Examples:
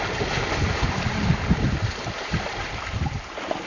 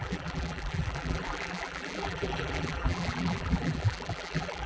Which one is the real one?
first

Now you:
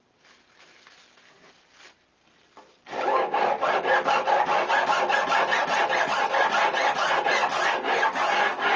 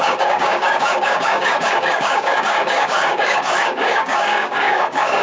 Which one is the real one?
first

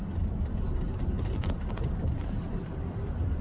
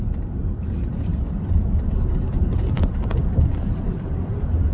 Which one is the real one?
first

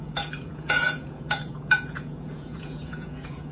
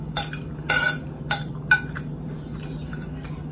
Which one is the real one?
second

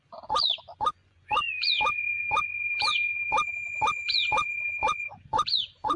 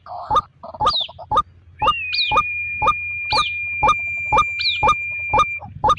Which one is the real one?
second